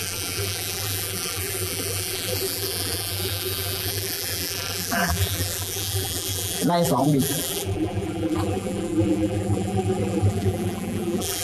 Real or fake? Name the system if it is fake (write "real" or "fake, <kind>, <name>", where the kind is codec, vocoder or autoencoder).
fake, vocoder, BigVGAN v2